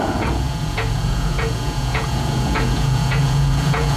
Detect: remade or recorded remade